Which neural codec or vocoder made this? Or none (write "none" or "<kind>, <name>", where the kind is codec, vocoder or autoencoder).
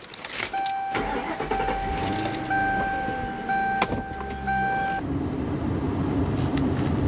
none